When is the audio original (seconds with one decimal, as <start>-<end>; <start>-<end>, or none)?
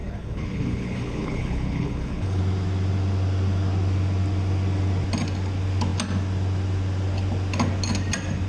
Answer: 2.4-8.5